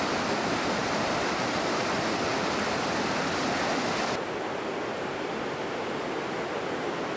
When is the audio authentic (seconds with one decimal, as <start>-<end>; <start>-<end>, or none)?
0.0-0.8; 1.8-7.2